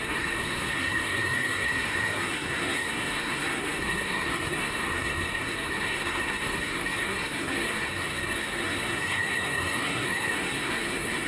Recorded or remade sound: remade